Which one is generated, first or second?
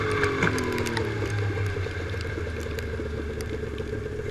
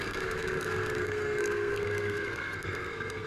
second